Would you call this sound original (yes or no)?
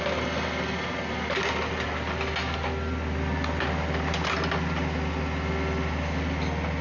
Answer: yes